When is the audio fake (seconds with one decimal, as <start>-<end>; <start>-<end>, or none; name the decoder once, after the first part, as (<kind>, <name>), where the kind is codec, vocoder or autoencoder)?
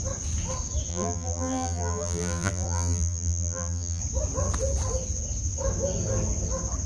0.9-4.0 (vocoder, BigVGAN v2)